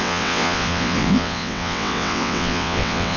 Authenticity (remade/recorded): remade